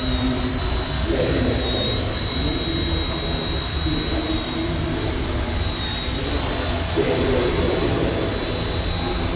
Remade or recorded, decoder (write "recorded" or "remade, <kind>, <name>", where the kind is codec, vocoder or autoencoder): recorded